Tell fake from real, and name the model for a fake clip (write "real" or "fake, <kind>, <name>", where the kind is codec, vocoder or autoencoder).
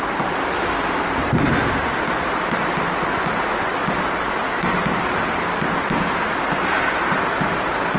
real